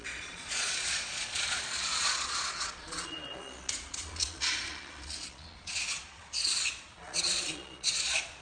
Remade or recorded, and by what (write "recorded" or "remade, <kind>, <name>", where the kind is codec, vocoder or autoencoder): remade, vocoder, Vocos